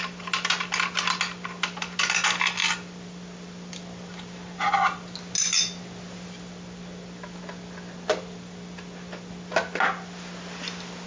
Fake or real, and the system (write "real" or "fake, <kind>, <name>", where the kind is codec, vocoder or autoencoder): real